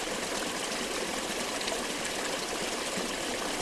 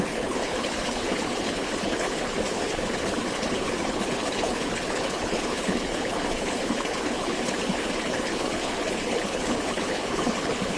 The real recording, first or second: first